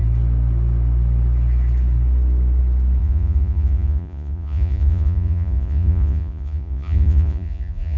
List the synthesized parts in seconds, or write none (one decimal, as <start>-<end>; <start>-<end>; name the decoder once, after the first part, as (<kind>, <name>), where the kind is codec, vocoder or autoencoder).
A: 3.0-8.0 (vocoder, Vocos)